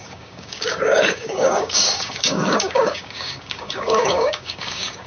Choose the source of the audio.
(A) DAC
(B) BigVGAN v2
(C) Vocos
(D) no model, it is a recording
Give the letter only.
A